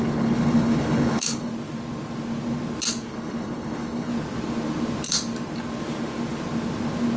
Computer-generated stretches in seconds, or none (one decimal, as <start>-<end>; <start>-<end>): 0.0-1.5; 3.1-4.1